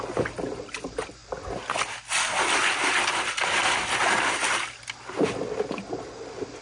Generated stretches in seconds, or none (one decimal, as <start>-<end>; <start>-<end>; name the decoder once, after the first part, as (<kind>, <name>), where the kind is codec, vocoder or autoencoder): none